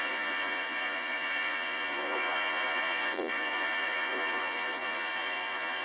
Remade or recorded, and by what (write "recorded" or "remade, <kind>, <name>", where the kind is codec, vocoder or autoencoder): remade, vocoder, Vocos